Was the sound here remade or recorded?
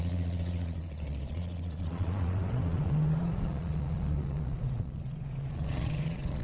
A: remade